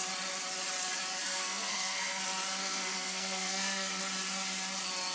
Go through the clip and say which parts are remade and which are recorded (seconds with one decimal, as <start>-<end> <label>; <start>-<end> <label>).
0.0-1.2 recorded; 1.2-2.2 remade; 2.2-2.6 recorded; 2.6-4.0 remade; 4.0-5.1 recorded

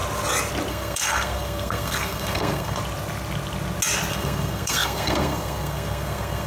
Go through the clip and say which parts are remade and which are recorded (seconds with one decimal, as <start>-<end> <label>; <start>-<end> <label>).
0.0-0.7 recorded; 0.7-2.8 remade; 2.8-4.1 recorded; 4.1-6.5 remade

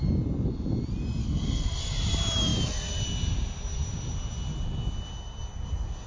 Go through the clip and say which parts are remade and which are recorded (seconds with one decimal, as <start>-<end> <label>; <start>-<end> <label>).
0.0-1.2 recorded; 1.2-1.8 remade; 1.8-6.1 recorded